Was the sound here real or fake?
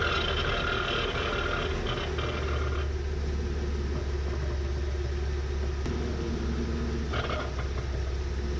real